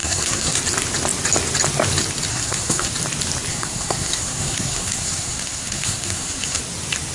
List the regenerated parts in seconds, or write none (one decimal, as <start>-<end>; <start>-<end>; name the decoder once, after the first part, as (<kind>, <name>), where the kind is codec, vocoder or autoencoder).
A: 0.0-0.6 (codec, SNAC); 2.3-2.9; 3.5-6.6